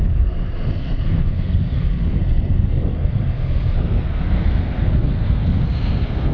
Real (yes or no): no